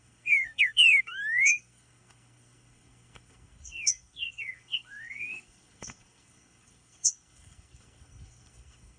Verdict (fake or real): fake